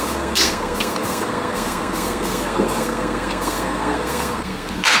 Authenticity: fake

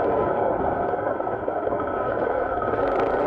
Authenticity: fake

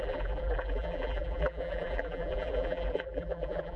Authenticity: fake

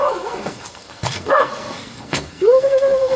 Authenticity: fake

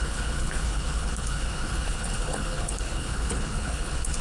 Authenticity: fake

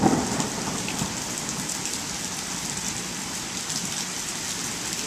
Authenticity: real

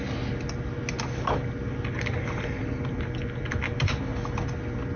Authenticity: real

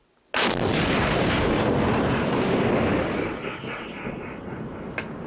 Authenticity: real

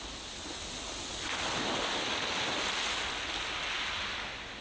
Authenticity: real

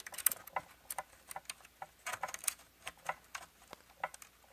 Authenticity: real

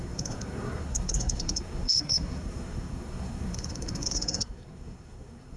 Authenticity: fake